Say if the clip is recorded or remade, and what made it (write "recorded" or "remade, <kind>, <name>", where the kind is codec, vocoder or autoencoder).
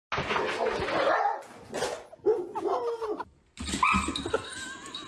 recorded